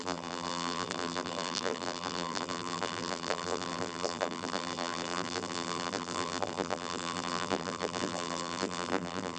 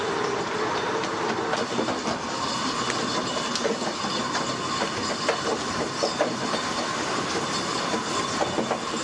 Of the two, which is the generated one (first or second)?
first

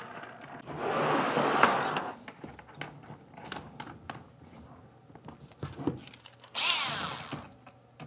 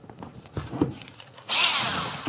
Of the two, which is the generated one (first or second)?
second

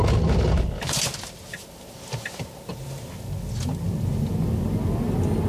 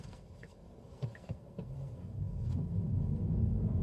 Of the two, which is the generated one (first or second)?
second